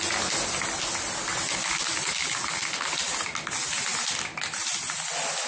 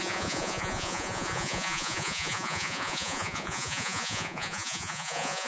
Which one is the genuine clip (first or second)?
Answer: first